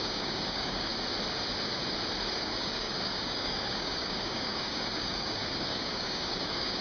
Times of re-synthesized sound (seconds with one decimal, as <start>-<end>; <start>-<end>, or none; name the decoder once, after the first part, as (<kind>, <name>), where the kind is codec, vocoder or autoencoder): 0.0-0.9 (codec, DAC); 2.3-6.8